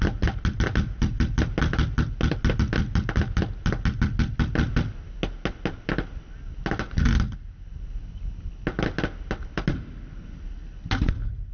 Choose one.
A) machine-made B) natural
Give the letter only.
B